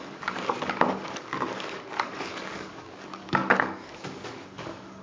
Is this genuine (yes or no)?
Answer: no